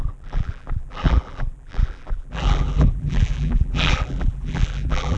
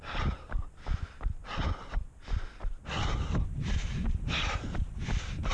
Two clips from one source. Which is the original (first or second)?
second